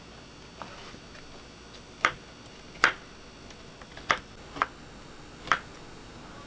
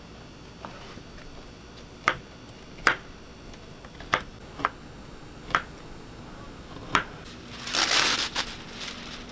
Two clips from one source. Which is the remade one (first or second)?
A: second